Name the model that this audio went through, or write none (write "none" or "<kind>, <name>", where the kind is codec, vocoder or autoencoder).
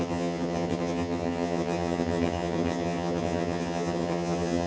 vocoder, HiFi-GAN